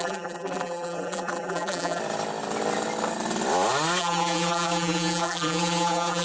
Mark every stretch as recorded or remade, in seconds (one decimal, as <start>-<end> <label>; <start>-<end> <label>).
0.0-2.0 remade; 2.0-4.0 recorded; 4.0-6.2 remade